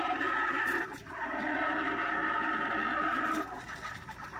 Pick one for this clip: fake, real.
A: real